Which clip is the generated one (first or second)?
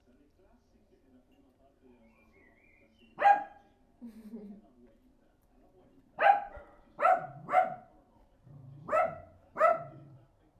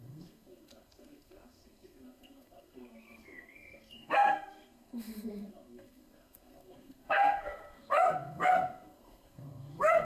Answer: second